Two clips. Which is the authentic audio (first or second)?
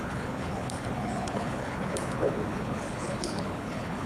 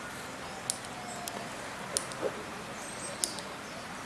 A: second